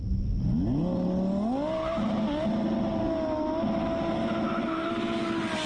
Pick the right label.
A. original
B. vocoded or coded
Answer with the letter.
A